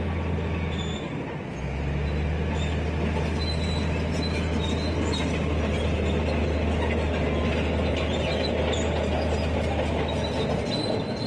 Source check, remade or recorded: recorded